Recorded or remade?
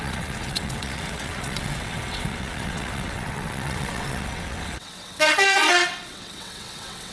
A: remade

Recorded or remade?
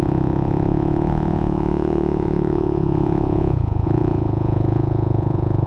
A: remade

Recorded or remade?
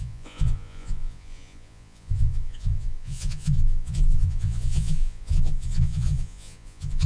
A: remade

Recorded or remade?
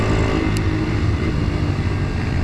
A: recorded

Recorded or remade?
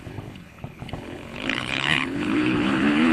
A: remade